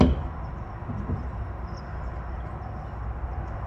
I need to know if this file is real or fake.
real